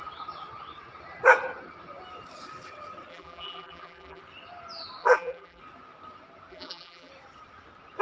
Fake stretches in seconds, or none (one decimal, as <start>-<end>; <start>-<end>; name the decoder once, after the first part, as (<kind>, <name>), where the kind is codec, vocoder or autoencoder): 3.1-4.2 (vocoder, BigVGAN v2); 5.0-5.6; 6.5-7.1